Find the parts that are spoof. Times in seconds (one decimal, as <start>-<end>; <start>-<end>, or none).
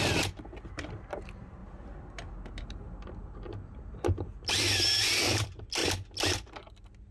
none